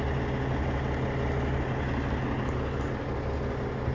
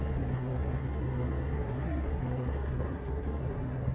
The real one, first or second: first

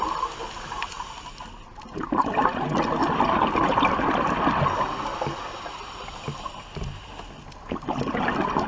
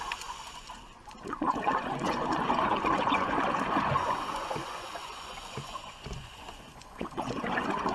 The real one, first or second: first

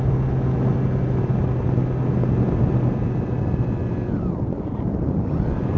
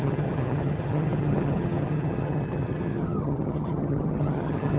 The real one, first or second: first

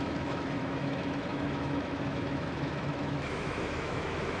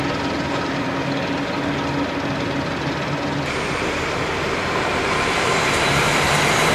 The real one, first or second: second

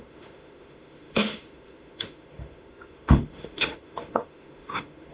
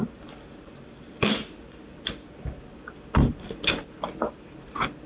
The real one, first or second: second